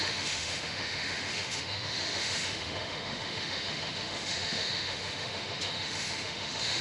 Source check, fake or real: fake